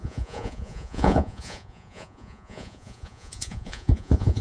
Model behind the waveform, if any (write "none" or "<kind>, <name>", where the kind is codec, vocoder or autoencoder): vocoder, Vocos